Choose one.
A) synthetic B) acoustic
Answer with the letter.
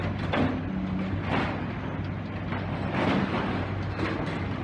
B